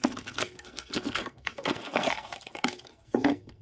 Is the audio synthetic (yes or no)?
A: yes